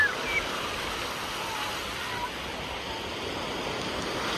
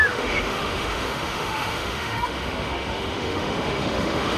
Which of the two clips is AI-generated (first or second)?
second